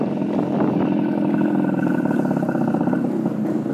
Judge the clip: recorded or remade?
recorded